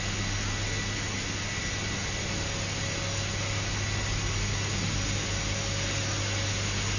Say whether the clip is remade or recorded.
recorded